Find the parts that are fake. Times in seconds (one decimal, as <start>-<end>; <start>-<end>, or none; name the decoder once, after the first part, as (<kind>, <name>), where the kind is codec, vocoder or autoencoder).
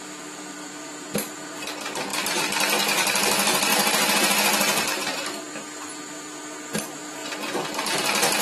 3.7-5.6 (vocoder, BigVGAN v2)